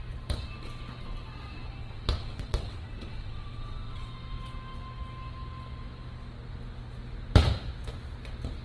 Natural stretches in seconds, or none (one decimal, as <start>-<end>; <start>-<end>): 0.0-1.8; 4.1-8.6